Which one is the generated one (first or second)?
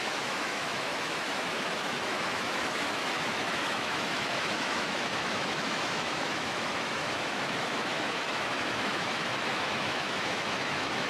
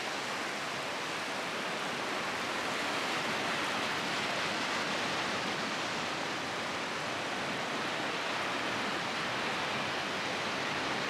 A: first